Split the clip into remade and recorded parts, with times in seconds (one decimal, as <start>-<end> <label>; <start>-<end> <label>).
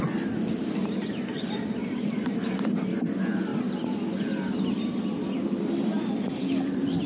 0.0-3.5 remade; 3.5-6.1 recorded; 6.1-7.1 remade